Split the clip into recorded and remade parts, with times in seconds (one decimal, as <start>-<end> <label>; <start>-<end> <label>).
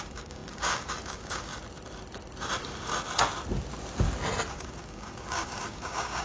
0.0-1.5 remade; 1.5-4.5 recorded; 4.5-6.2 remade